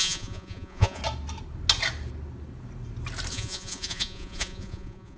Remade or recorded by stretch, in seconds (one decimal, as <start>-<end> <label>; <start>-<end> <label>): 0.0-1.0 remade; 1.0-3.3 recorded; 3.3-5.2 remade